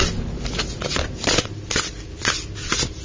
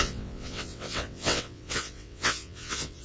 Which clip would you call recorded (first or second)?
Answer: first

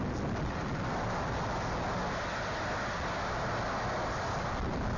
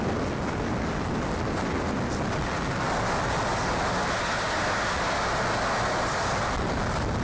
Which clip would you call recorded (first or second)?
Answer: second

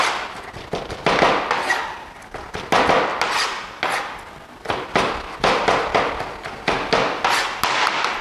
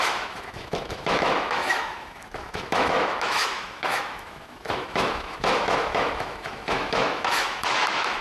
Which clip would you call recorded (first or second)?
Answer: first